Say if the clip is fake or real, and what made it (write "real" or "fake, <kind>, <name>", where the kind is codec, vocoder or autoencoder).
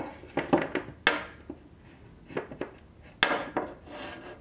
real